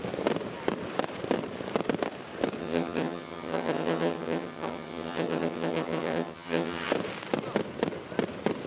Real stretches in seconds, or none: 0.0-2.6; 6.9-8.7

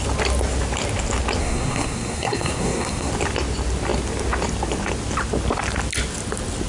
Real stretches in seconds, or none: 0.0-1.4; 3.1-6.7

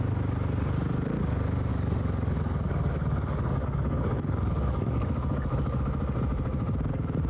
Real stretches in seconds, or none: 0.0-1.7; 5.8-7.3

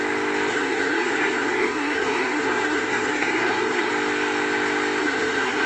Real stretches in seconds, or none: 0.0-0.5; 3.9-5.0

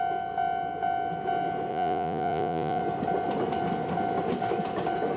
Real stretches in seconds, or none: 0.0-1.7; 2.8-5.2

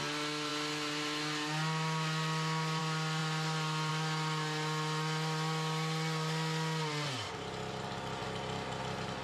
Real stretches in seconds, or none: 0.0-9.2

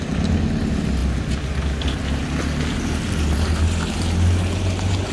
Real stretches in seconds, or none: 0.0-5.1